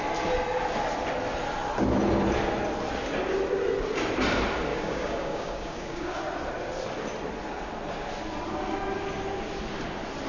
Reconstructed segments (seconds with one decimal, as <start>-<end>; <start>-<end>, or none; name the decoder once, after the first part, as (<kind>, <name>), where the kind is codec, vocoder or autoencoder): 4.7-6.1 (codec, DAC)